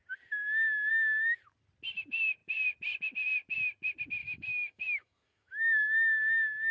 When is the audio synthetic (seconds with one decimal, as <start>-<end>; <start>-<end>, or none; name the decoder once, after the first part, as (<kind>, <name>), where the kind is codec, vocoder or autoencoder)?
4.2-6.2 (autoencoder, DAC-VAE)

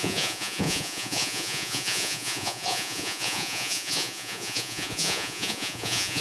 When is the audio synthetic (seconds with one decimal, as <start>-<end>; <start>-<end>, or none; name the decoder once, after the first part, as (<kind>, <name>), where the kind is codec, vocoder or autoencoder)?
0.0-6.2 (vocoder, Vocos)

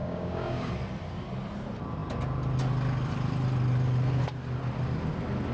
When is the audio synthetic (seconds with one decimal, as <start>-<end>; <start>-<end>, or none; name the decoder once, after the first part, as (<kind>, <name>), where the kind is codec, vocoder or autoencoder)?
0.0-0.7 (codec, DAC)

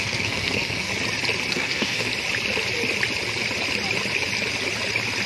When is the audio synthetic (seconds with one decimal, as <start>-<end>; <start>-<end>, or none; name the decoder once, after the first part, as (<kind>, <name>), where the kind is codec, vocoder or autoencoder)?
0.0-0.9 (codec, SNAC); 1.5-2.1